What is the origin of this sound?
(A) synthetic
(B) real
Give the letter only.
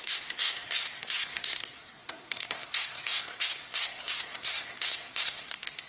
A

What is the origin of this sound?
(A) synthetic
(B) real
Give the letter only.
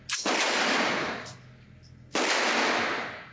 B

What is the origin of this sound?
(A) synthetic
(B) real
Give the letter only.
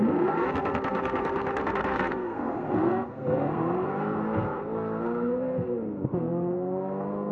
A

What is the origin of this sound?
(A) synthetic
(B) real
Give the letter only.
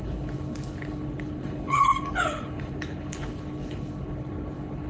A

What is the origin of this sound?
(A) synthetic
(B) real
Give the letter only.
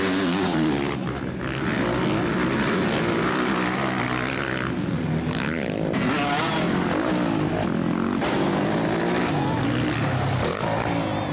B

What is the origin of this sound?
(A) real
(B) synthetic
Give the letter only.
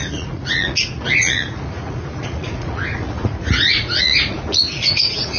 B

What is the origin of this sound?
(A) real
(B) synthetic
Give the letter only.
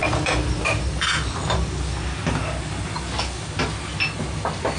A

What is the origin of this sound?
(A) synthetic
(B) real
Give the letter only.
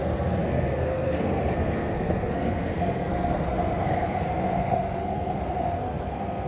A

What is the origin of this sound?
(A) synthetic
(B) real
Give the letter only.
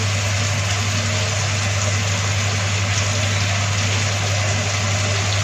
B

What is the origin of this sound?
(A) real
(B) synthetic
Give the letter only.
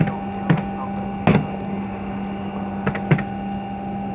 A